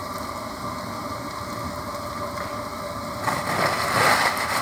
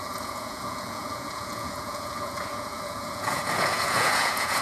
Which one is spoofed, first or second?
second